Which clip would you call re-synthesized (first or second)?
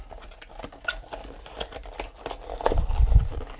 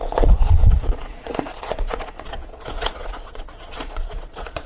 second